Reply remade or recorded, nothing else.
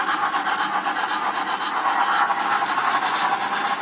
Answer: recorded